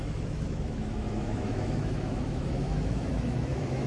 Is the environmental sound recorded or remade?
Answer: remade